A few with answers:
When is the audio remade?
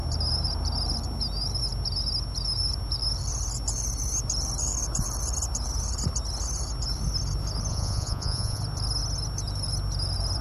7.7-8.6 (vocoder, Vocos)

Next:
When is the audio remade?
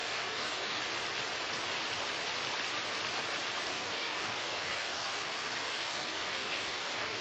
0.0-0.8 (codec, DAC); 3.7-7.2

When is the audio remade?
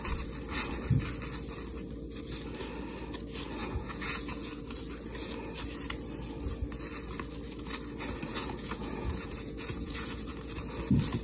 3.6-4.6 (vocoder, Vocos); 8.3-10.5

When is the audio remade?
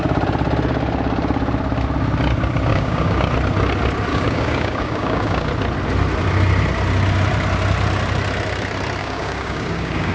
2.7-3.3 (codec, DAC); 4.1-5.5; 9.0-10.1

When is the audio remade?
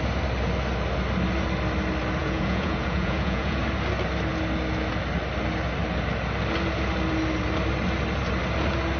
2.2-3.6 (vocoder, Vocos)